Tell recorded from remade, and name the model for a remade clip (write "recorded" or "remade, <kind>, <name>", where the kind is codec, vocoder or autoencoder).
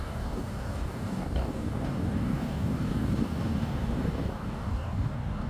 remade, codec, DAC